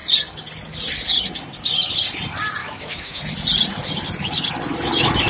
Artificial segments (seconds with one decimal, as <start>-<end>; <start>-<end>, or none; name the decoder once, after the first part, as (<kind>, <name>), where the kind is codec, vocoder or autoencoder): 2.6-3.2 (autoencoder, DAC-VAE)